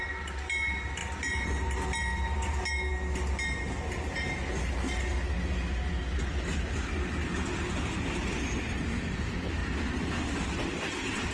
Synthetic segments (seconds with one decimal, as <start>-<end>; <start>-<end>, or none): none